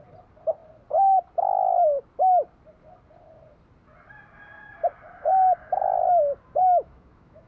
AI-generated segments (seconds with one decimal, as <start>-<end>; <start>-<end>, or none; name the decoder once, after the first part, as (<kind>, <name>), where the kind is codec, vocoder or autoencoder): 6.6-7.5 (autoencoder, DAC-VAE)

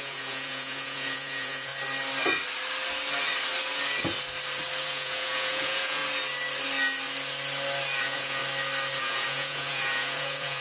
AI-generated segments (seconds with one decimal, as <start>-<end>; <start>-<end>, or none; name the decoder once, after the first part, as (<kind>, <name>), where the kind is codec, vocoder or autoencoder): 0.0-1.7 (vocoder, Vocos); 4.8-6.0; 8.0-8.4; 9.0-10.6

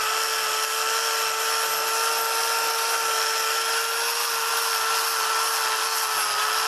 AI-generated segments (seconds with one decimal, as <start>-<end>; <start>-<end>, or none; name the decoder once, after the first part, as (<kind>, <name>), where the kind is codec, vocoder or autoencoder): none

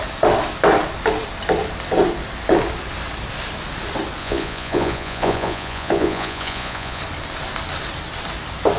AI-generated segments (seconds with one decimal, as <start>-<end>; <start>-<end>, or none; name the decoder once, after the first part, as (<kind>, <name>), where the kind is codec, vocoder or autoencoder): 4.2-7.0 (vocoder, Vocos)

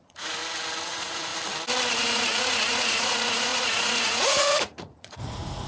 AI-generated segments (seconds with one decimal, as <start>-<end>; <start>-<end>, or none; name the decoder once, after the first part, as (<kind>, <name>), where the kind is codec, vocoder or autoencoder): 0.0-0.4 (vocoder, Vocos); 0.9-1.3; 2.0-5.7

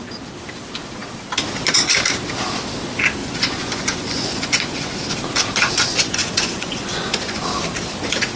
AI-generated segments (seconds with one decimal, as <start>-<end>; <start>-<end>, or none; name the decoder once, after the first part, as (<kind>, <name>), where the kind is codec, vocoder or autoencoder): 3.2-5.0 (vocoder, Vocos); 5.9-7.4